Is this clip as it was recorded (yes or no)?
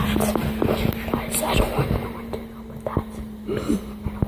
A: yes